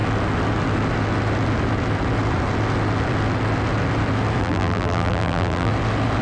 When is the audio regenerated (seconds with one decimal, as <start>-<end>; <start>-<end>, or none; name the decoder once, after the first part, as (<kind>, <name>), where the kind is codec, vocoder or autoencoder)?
4.4-5.7 (vocoder, BigVGAN v2)